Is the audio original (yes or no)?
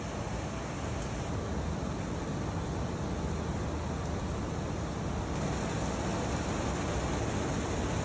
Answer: yes